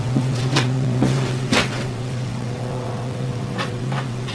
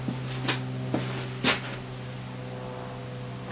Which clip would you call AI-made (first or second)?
first